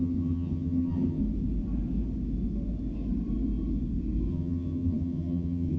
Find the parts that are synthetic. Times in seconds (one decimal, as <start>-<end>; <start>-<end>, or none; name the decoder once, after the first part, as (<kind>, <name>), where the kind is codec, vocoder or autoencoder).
0.0-1.2 (vocoder, HiFi-GAN); 4.3-5.8